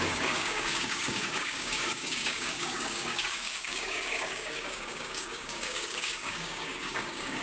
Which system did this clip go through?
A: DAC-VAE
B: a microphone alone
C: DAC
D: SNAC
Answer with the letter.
C